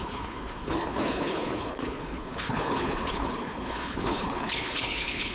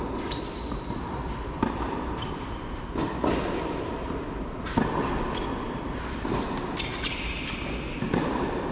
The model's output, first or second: first